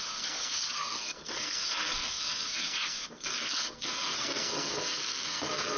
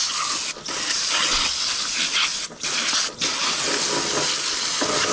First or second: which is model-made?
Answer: first